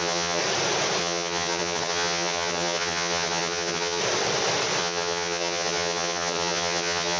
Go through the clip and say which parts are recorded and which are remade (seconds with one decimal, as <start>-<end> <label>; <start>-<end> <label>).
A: 0.0-0.4 remade; 0.4-1.0 recorded; 1.0-4.0 remade; 4.0-4.8 recorded; 4.8-7.2 remade